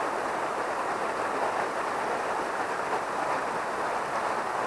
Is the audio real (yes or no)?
yes